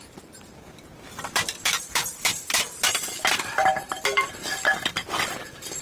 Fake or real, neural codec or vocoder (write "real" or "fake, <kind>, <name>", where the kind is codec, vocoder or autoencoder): fake, vocoder, BigVGAN v2